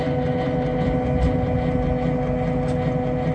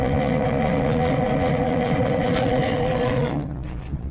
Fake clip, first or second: second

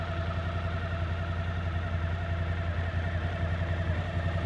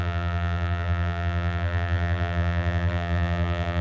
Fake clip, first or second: second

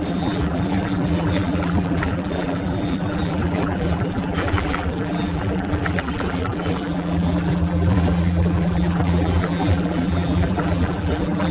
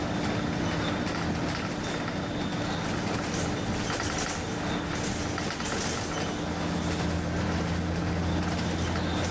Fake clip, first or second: first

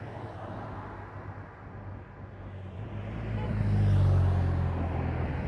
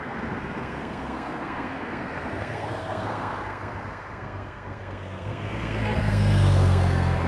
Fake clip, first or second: second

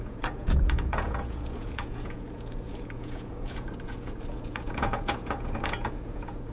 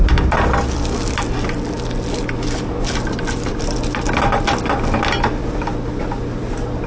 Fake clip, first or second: first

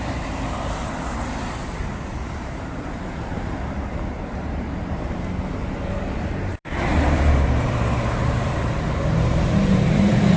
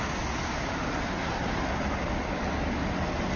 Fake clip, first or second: first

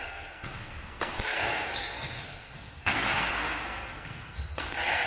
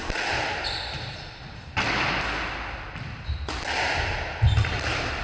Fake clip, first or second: first